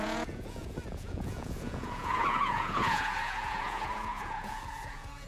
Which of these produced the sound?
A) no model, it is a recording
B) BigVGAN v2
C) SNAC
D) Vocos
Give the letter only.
D